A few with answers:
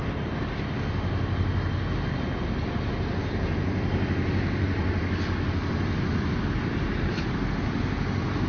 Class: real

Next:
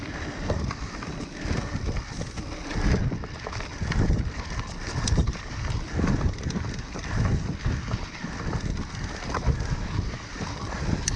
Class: real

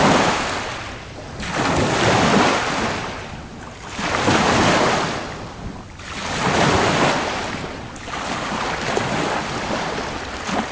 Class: real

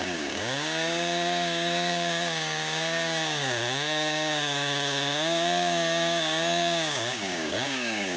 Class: fake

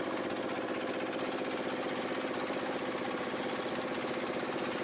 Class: real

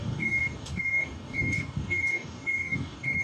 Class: fake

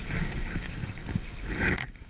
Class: fake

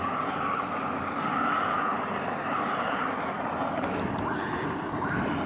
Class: real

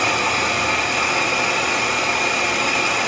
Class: real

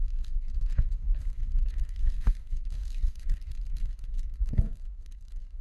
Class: fake